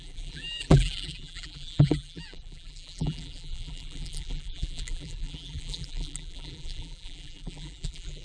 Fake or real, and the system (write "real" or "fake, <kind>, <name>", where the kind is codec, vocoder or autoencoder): fake, vocoder, BigVGAN v2